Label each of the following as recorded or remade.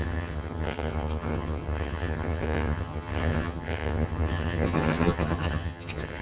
remade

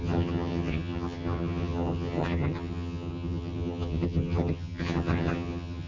remade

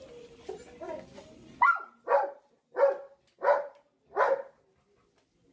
recorded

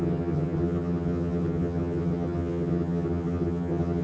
remade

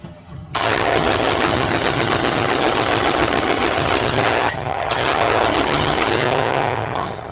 remade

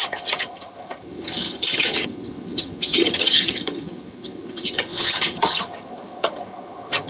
remade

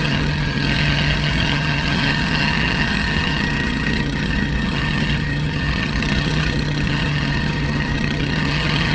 remade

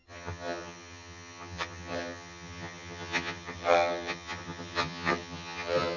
remade